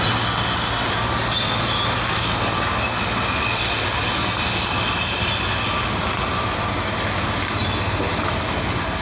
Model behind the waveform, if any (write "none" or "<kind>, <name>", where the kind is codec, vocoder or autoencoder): none